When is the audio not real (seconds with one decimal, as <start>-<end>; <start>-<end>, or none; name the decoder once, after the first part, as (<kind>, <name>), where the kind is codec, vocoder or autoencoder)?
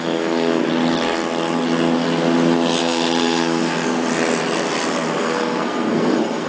0.0-0.6 (codec, SNAC); 2.8-3.6; 5.2-6.5